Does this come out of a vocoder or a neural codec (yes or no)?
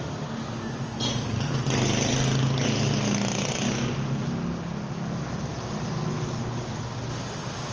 no